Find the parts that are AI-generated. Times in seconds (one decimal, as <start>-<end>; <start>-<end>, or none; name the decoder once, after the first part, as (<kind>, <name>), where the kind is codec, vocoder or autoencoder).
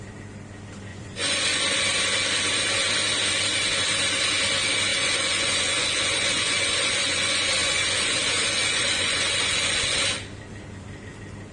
0.9-1.6 (vocoder, Vocos); 4.9-10.0